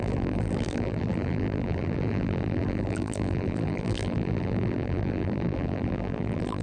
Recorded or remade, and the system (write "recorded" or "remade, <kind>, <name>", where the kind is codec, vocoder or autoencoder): remade, vocoder, BigVGAN v2